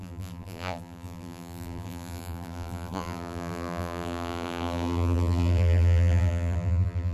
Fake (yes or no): yes